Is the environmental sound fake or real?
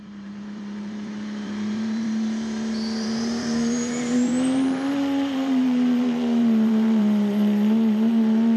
fake